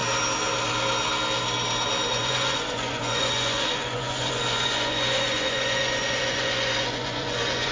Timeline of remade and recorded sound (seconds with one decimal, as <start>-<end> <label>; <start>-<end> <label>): 0.0-2.1 recorded; 2.1-7.7 remade